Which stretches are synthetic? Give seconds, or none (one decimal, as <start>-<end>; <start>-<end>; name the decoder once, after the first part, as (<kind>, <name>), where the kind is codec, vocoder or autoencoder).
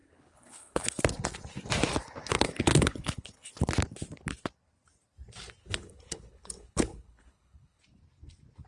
0.0-1.0 (codec, HILCodec); 2.2-3.5; 5.6-7.8